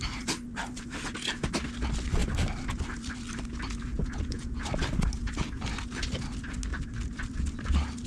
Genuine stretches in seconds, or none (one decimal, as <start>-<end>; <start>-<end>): 0.0-3.9; 4.6-8.1